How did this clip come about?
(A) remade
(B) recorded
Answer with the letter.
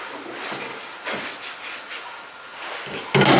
B